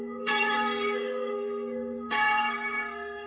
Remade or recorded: remade